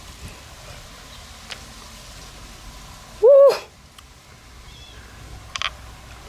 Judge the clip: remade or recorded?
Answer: recorded